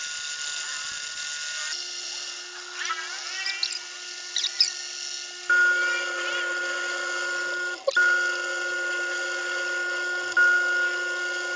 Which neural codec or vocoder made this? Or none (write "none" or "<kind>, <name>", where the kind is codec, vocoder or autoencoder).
none